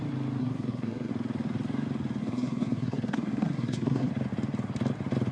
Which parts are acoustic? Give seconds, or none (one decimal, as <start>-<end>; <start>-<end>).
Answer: 0.0-0.4; 1.1-2.2; 4.1-5.3

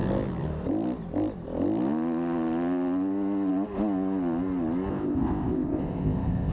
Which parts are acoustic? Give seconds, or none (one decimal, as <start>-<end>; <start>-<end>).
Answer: 0.0-4.9

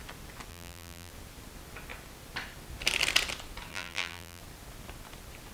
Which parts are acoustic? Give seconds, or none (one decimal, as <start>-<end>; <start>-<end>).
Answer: 0.0-0.5; 1.1-3.7; 4.4-5.5

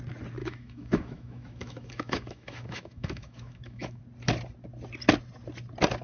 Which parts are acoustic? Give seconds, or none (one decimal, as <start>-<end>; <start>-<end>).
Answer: 0.0-0.4; 4.0-6.0